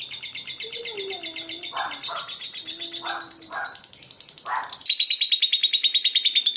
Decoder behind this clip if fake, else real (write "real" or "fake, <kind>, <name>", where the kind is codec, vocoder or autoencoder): real